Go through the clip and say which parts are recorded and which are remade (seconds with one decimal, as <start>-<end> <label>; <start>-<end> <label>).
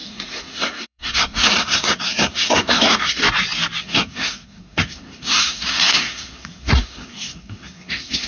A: 0.0-3.2 remade; 3.2-3.8 recorded; 3.8-8.3 remade